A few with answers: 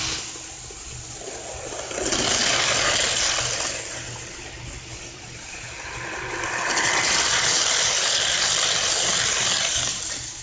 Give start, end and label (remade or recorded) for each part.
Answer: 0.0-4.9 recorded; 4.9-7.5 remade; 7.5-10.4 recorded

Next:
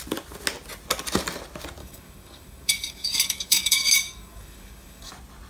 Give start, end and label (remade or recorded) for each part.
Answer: 0.0-1.8 recorded; 1.8-5.1 remade; 5.1-5.5 recorded

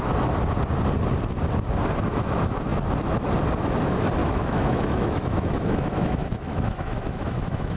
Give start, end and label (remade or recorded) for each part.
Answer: 0.0-4.2 recorded; 4.2-7.8 remade

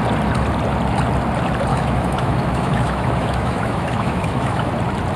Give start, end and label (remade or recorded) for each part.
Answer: 0.0-1.7 recorded; 1.7-4.7 remade; 4.7-5.2 recorded

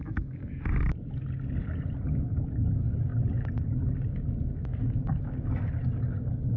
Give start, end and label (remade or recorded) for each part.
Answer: 0.0-0.4 remade; 0.4-2.1 recorded; 2.1-3.1 remade; 3.1-4.7 recorded; 4.7-6.6 remade

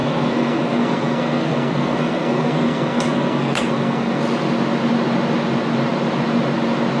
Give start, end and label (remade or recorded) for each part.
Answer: 0.0-4.2 remade; 4.2-7.0 recorded

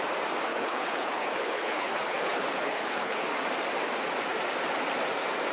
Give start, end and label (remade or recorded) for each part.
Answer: 0.0-0.5 recorded; 0.5-3.2 remade; 3.2-5.5 recorded